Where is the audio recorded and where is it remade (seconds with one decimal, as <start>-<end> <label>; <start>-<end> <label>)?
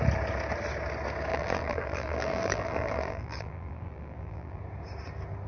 0.0-1.3 recorded; 1.3-4.6 remade; 4.6-5.5 recorded